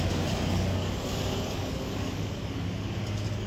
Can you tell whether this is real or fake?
fake